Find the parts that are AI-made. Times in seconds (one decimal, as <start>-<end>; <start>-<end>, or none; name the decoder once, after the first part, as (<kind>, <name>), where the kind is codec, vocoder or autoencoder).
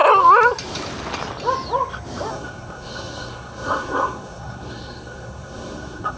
2.3-6.2 (codec, SNAC)